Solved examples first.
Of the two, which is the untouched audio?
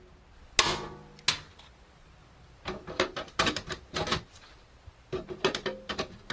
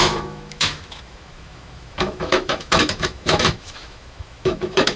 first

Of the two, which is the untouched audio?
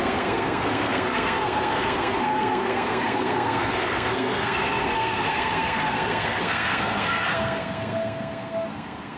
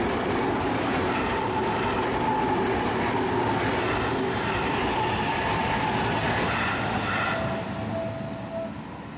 second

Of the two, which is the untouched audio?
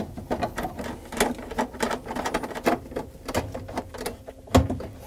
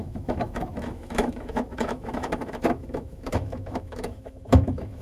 first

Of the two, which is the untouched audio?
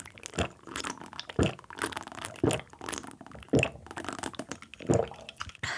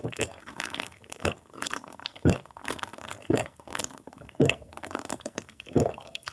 first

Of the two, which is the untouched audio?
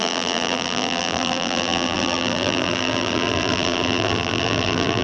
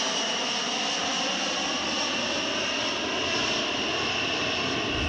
second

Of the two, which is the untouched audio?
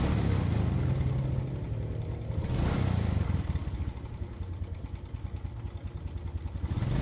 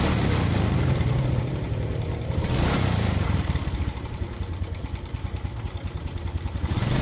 first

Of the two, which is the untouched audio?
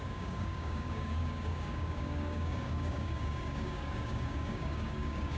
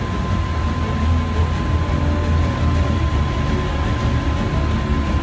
second